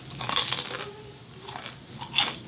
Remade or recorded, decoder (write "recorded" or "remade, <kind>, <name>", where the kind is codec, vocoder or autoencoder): recorded